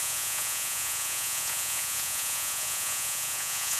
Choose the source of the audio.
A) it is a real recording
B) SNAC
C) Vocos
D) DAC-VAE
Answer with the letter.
C